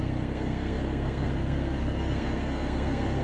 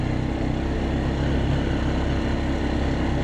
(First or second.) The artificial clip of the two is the first